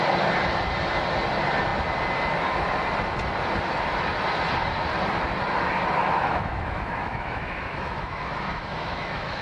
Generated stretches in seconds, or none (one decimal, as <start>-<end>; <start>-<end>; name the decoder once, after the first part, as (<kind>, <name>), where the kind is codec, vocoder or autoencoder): 6.0-9.4 (autoencoder, DAC-VAE)